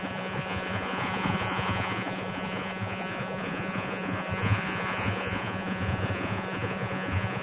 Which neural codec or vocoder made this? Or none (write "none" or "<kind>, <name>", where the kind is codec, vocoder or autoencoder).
vocoder, Vocos